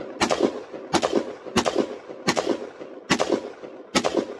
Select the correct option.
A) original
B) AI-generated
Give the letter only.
A